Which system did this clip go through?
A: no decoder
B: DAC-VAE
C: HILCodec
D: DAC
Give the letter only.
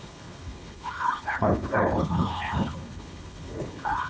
C